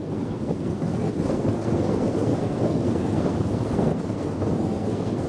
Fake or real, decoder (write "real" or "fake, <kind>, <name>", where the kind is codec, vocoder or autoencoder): fake, codec, SNAC